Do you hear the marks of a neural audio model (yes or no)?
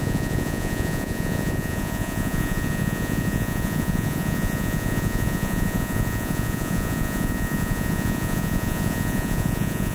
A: yes